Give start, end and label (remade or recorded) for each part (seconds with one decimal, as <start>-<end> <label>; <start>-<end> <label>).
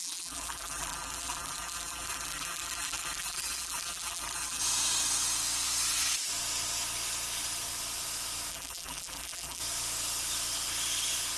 0.0-4.6 remade; 4.6-8.5 recorded; 8.5-9.6 remade; 9.6-11.4 recorded